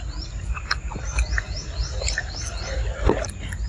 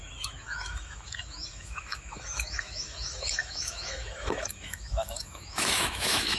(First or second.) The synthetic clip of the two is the second